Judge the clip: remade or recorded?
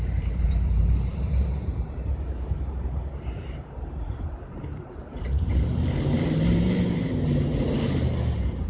remade